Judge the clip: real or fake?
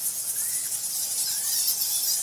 real